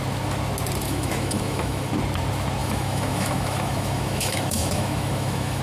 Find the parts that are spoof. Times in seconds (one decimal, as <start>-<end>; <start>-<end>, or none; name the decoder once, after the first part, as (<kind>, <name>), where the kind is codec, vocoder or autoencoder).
0.8-1.9 (autoencoder, DAC-VAE); 2.6-5.6